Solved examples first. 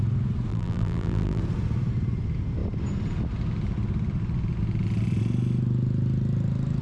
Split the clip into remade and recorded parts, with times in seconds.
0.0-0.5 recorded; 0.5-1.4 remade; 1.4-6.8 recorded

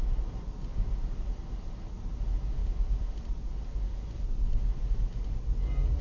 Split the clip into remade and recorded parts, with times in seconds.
0.0-0.7 recorded; 0.7-1.6 remade; 1.6-2.6 recorded; 2.6-4.6 remade; 4.6-6.0 recorded

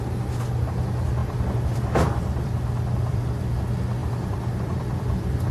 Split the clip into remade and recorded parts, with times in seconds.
0.0-1.2 recorded; 1.2-3.2 remade; 3.2-4.0 recorded; 4.0-5.5 remade

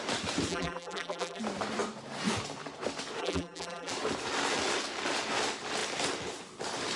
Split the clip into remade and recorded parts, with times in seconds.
0.0-0.5 recorded; 0.5-1.4 remade; 1.4-3.2 recorded; 3.2-3.9 remade; 3.9-7.0 recorded